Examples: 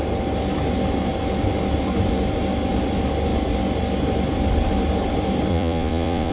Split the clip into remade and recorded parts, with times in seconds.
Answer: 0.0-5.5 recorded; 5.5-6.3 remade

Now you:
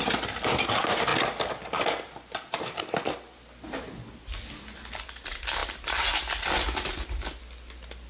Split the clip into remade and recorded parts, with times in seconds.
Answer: 0.0-8.1 recorded

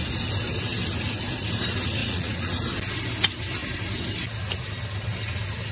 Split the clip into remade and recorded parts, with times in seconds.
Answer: 0.0-2.0 recorded; 2.0-2.5 remade; 2.5-5.7 recorded

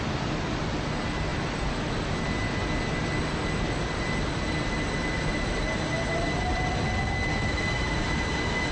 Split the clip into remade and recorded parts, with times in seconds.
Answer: 0.0-8.7 recorded

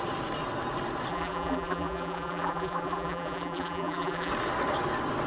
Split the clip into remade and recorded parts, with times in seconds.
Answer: 0.0-1.1 recorded; 1.1-4.3 remade; 4.3-5.3 recorded